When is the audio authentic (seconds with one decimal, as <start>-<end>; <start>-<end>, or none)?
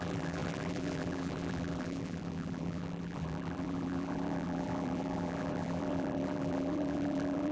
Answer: none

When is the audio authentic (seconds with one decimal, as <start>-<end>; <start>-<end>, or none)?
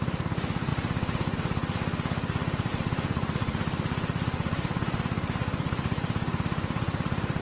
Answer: 0.7-2.7